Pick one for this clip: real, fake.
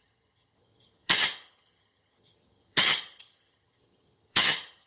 fake